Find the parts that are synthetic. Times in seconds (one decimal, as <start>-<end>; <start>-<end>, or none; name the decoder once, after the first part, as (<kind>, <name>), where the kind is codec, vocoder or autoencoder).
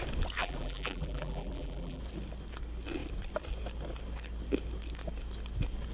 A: 0.4-2.0 (vocoder, BigVGAN v2)